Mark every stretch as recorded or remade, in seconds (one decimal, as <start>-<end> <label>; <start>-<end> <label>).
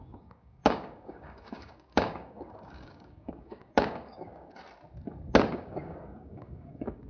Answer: 0.0-4.6 remade; 4.6-5.5 recorded; 5.5-7.1 remade